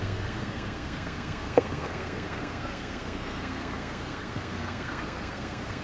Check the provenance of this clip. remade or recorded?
remade